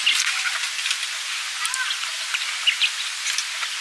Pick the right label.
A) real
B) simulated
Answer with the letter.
A